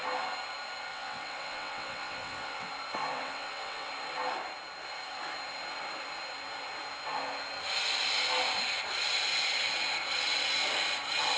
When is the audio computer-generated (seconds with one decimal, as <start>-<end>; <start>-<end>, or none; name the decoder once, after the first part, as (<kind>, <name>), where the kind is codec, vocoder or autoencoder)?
0.9-2.7 (vocoder, WaveNeXt); 3.1-3.9